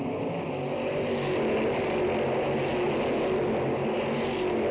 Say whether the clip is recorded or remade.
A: recorded